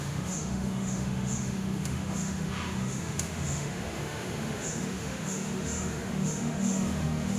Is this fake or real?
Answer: fake